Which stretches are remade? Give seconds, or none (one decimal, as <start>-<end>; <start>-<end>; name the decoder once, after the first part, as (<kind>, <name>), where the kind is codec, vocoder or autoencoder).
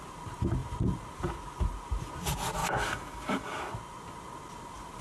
2.6-3.7 (codec, DAC)